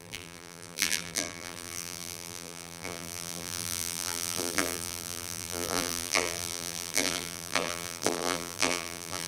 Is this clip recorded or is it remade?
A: remade